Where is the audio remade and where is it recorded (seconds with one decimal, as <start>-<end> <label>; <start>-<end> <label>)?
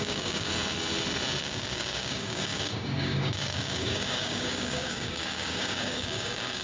0.0-0.5 remade; 0.5-1.4 recorded; 1.4-6.6 remade